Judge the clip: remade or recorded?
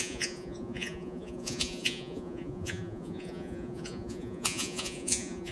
remade